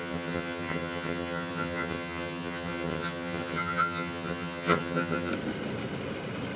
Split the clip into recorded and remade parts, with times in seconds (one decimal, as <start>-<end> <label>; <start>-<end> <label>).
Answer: 0.0-5.3 remade; 5.3-6.6 recorded